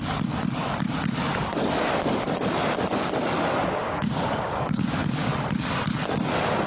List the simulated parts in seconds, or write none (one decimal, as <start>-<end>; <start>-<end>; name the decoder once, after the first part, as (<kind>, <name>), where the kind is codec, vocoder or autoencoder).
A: 3.8-5.3 (codec, DAC)